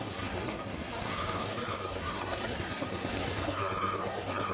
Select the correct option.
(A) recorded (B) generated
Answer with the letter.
B